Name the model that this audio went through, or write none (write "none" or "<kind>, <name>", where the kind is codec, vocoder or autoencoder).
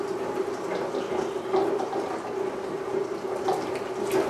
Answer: none